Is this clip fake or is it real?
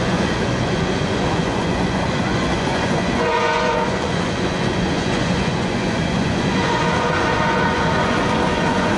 fake